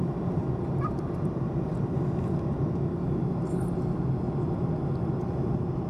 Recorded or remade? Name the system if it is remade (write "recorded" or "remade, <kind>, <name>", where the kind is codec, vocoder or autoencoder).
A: recorded